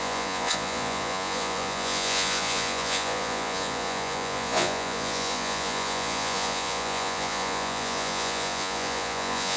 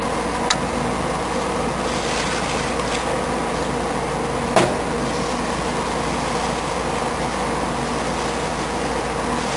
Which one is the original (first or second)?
second